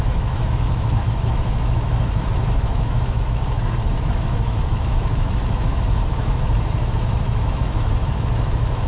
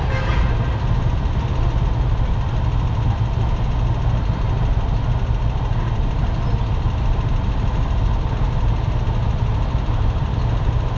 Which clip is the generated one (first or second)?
first